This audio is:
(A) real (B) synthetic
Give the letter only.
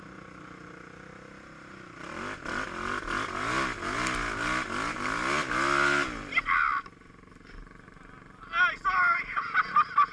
A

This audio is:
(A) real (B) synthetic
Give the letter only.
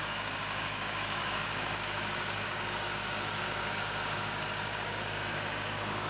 B